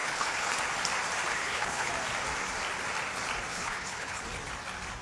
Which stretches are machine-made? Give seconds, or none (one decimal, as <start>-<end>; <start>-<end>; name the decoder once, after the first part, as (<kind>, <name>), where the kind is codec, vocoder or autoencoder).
0.0-0.5 (codec, HILCodec); 1.3-1.9; 3.5-4.2